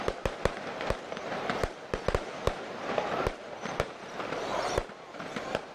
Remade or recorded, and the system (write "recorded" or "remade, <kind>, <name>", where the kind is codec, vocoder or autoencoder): remade, vocoder, BigVGAN v2